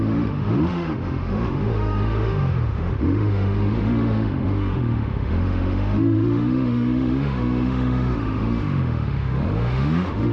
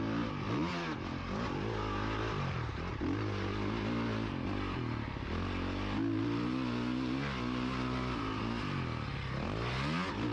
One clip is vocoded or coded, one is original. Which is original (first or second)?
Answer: second